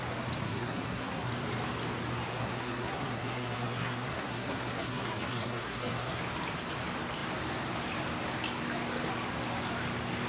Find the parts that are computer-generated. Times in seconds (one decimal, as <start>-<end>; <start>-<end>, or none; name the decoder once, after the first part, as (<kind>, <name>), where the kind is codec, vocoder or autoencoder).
0.4-1.3 (codec, SNAC); 2.3-6.2